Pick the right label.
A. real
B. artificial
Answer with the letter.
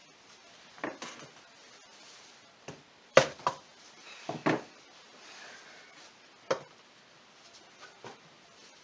A